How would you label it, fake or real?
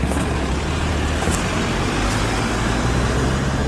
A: real